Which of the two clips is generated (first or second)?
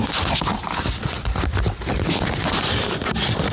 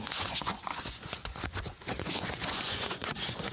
second